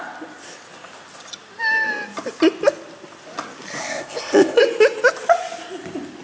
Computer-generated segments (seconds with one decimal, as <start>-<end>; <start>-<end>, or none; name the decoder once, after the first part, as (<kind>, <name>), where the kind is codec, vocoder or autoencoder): 3.8-4.6 (codec, ZipCodec)